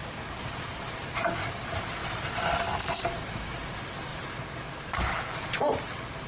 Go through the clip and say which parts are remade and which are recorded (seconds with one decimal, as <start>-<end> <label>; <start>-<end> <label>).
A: 0.0-6.3 recorded